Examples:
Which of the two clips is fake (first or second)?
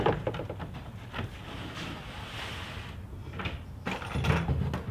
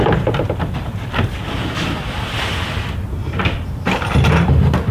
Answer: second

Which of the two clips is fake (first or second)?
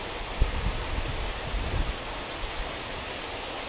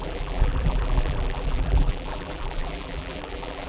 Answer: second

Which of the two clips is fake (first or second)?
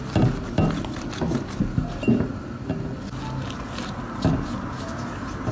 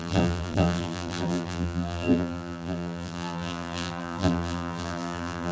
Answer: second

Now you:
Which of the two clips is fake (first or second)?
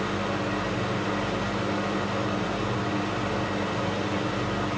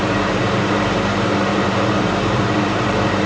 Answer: second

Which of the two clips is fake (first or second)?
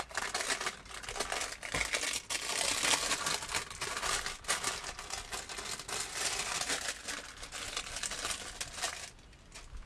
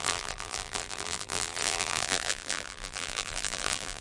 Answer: second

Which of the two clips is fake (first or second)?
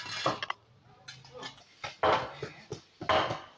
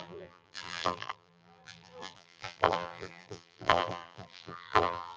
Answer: second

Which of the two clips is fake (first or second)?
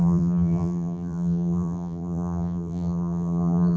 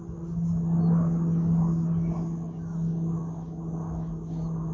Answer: first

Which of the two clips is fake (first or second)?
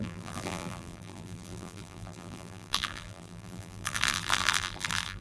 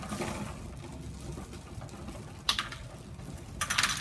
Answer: first